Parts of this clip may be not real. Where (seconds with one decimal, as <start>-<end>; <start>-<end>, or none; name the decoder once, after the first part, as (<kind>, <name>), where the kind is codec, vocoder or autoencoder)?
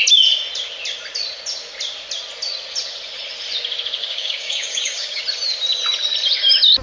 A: 4.0-5.2 (codec, DAC)